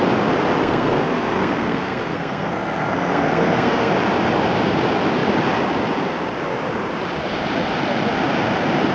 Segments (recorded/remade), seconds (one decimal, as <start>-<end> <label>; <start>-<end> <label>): 0.0-0.6 recorded; 0.6-3.9 remade; 3.9-8.9 recorded